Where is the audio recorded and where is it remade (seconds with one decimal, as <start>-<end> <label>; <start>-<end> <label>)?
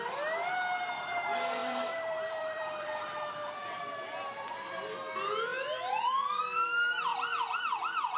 0.0-1.6 recorded; 1.6-4.8 remade; 4.8-5.5 recorded; 5.5-6.4 remade; 6.4-7.1 recorded; 7.1-8.2 remade